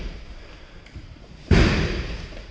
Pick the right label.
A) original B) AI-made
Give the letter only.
B